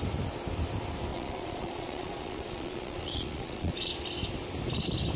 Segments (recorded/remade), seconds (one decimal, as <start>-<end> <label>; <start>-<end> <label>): 0.0-1.1 recorded; 1.1-3.9 remade; 3.9-5.2 recorded

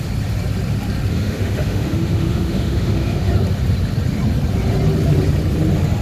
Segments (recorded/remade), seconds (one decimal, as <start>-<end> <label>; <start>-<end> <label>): 0.0-1.1 recorded; 1.1-3.3 remade; 3.3-6.0 recorded